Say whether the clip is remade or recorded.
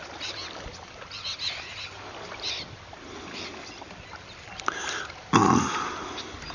recorded